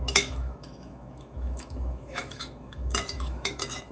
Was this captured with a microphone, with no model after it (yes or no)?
no